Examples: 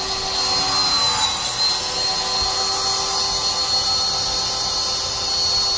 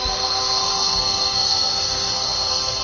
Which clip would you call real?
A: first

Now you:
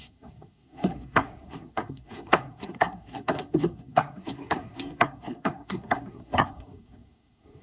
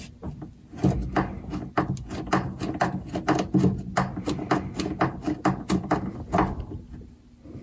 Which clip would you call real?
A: second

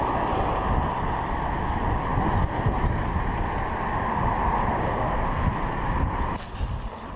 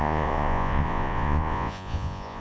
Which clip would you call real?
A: first